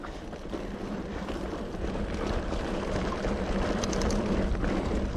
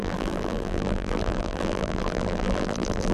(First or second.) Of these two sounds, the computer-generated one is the second